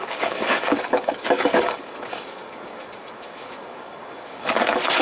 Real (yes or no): no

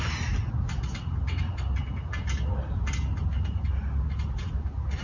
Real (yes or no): yes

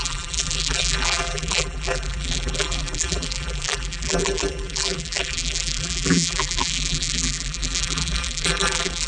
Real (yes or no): no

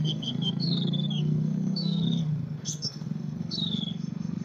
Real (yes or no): no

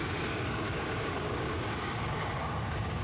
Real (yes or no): no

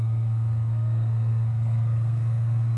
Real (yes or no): no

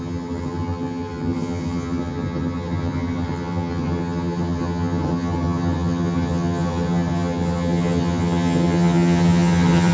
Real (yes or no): no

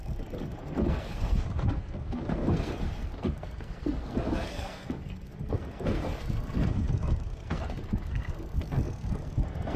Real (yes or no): no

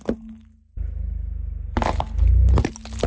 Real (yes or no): yes